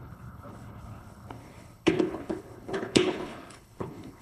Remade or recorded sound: remade